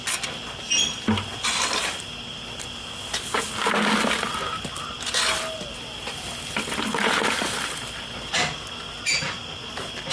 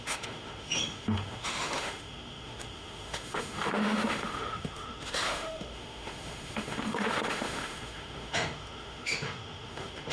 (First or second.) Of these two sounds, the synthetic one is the second